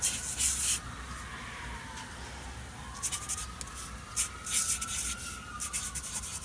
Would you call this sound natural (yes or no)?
yes